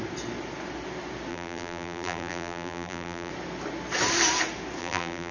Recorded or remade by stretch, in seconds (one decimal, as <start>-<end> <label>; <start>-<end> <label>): 0.0-1.3 recorded; 1.3-3.3 remade; 3.3-4.8 recorded; 4.8-5.3 remade